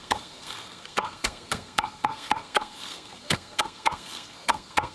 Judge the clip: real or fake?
fake